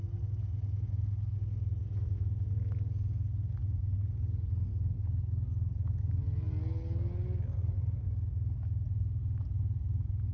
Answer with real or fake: real